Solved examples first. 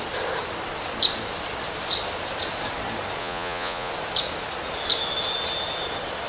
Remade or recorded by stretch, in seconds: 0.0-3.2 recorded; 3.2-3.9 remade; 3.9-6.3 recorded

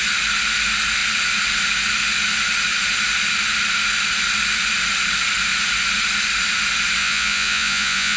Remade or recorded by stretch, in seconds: 0.0-7.0 recorded; 7.0-8.2 remade

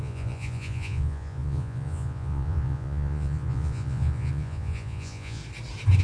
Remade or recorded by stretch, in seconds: 0.0-5.4 remade; 5.4-6.0 recorded

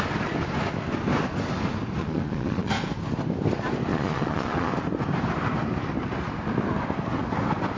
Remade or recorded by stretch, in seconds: 0.0-2.0 recorded; 2.0-2.7 remade; 2.7-3.9 recorded; 3.9-4.7 remade; 4.7-7.8 recorded

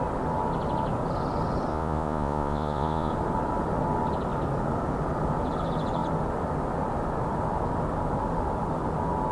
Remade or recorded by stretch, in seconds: 0.0-1.7 recorded; 1.7-3.1 remade; 3.1-9.3 recorded

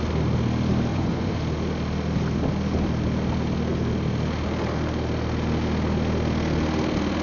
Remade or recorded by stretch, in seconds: 0.0-0.9 recorded; 0.9-1.4 remade; 1.4-7.2 recorded